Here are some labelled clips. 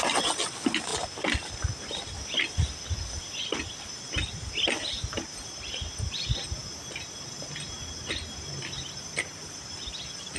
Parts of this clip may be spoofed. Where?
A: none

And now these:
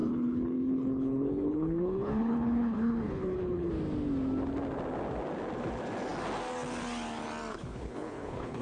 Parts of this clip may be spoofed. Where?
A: 0.0-3.7 (codec, HILCodec); 7.5-8.6